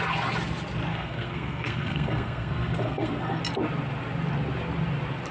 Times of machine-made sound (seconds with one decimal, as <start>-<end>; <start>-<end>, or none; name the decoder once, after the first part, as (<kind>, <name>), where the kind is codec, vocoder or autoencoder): 0.9-3.4 (codec, SNAC)